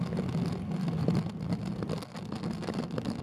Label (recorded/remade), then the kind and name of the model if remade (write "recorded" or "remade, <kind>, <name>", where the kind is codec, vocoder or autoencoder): recorded